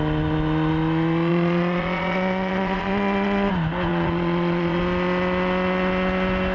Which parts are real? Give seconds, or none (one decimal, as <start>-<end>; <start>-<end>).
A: 0.0-1.3; 3.5-3.9; 4.8-6.5